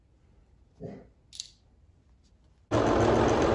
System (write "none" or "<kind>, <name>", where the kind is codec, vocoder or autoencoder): none